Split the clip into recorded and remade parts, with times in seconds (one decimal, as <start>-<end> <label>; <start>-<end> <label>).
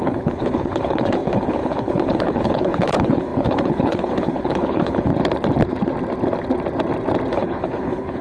0.0-5.1 remade; 5.1-7.3 recorded; 7.3-8.2 remade